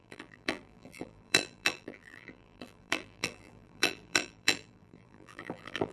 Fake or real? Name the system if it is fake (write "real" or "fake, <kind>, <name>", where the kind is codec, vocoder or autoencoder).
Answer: fake, vocoder, BigVGAN v2